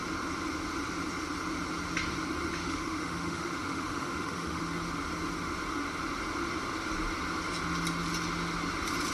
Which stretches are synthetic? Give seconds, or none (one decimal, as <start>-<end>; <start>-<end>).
2.6-4.6